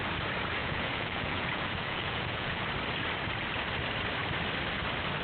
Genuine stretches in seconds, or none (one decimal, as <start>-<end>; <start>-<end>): 0.0-0.6; 2.6-5.2